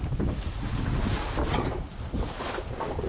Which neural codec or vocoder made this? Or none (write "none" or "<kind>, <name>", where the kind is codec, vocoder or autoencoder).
none